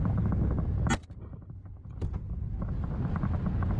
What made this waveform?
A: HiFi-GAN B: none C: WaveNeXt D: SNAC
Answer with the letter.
B